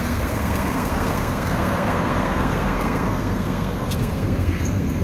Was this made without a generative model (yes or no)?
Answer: no